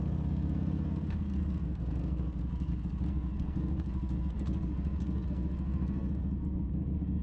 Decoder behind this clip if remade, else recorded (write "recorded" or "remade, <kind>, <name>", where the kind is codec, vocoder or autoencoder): remade, codec, SNAC